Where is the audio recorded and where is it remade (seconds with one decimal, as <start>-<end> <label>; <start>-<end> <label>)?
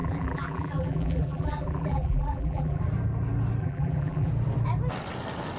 0.0-2.8 remade; 2.8-3.6 recorded; 3.6-4.3 remade; 4.3-5.6 recorded